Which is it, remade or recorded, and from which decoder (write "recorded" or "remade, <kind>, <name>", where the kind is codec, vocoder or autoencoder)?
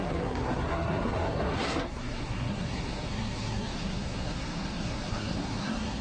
remade, codec, SNAC